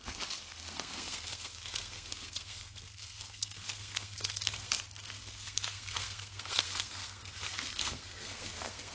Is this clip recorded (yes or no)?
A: no